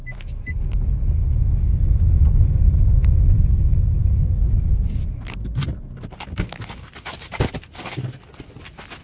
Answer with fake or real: real